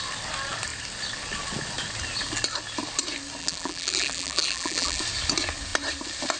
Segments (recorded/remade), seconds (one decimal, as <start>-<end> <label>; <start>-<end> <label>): 0.0-3.4 recorded; 3.4-5.0 remade; 5.0-6.4 recorded